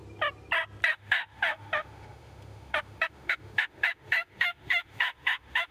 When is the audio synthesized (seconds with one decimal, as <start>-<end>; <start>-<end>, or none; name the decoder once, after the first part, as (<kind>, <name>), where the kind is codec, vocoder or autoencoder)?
0.9-5.7 (autoencoder, DAC-VAE)